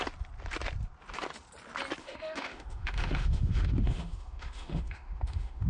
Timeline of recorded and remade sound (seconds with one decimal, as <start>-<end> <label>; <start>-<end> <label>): 0.0-2.0 recorded; 2.0-5.7 remade